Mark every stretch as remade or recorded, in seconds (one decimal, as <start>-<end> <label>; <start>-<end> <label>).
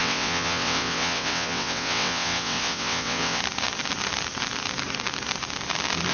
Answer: 0.0-3.4 remade; 3.4-6.1 recorded